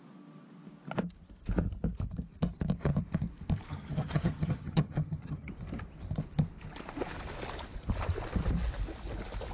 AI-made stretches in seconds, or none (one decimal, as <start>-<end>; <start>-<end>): 3.7-5.5